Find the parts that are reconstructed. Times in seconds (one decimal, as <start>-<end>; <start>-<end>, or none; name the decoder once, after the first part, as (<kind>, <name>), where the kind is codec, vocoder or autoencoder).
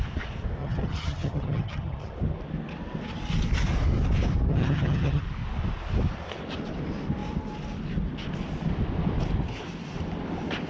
0.6-2.1 (vocoder, HiFi-GAN); 4.5-5.2